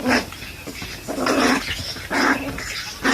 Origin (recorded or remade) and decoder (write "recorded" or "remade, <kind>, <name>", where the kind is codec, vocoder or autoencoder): recorded